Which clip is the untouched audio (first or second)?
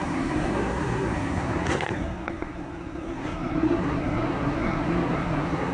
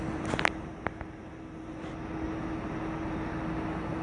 second